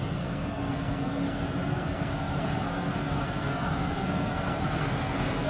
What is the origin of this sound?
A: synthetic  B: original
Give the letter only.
A